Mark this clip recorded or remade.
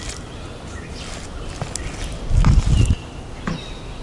recorded